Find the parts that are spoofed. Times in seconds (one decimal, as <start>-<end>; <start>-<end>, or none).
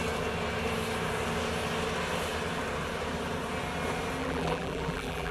4.2-5.3